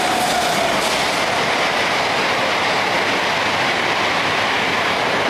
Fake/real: real